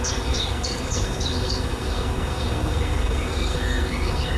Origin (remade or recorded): remade